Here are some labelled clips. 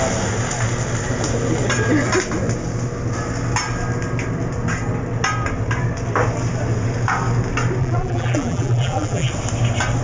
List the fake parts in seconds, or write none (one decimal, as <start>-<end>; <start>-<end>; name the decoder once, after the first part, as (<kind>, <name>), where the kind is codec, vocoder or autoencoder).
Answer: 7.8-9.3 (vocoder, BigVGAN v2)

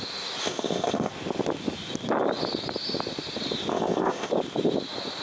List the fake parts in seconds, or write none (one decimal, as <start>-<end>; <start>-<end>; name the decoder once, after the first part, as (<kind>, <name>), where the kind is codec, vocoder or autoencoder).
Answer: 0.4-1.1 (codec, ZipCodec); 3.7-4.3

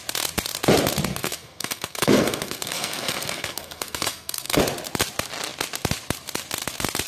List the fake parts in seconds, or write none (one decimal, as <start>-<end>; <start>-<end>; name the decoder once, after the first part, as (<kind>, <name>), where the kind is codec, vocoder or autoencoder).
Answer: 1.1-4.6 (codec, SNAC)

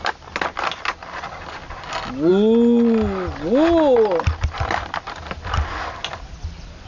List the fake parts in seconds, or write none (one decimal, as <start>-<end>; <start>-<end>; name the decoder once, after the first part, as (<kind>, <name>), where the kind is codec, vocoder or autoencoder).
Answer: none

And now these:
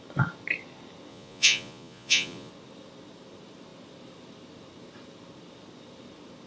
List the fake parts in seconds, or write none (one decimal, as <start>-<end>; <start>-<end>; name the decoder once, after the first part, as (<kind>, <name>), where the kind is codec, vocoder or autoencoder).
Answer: 1.1-2.5 (vocoder, Vocos)